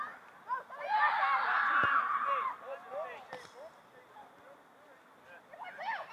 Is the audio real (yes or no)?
yes